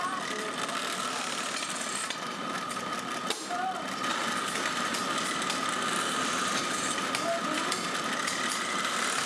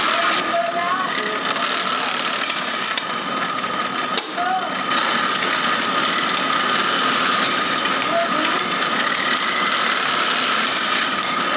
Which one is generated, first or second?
first